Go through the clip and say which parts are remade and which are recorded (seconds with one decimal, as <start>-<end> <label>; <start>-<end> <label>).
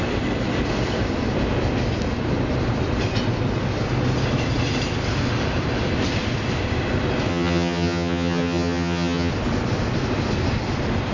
0.0-7.3 recorded; 7.3-9.3 remade; 9.3-11.1 recorded